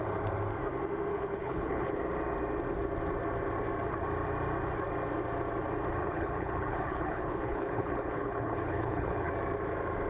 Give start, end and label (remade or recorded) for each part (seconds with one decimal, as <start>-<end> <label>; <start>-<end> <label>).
0.0-1.1 recorded; 1.1-2.0 remade; 2.0-6.0 recorded; 6.0-9.3 remade; 9.3-10.1 recorded